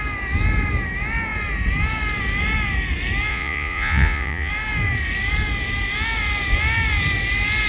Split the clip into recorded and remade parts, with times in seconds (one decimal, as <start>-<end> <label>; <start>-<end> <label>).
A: 0.0-3.3 recorded; 3.3-4.5 remade; 4.5-7.7 recorded